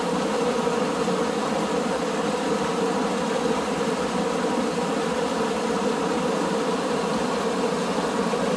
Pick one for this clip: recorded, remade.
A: recorded